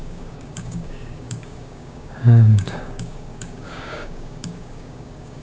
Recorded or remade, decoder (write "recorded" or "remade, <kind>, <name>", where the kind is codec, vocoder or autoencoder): remade, codec, DAC